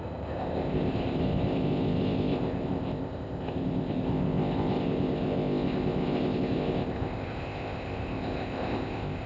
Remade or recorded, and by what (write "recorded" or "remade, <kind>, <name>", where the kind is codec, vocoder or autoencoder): remade, codec, ZipCodec